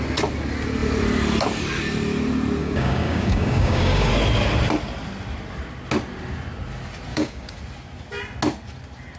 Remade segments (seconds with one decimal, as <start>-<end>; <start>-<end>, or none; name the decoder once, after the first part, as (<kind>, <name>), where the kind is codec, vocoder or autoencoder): 2.6-4.1 (codec, DAC); 7.1-7.6